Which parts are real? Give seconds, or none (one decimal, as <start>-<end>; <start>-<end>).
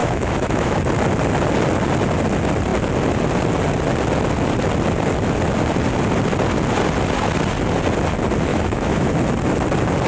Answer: 0.8-8.5; 9.2-10.1